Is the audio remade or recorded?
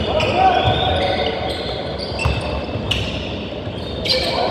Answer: recorded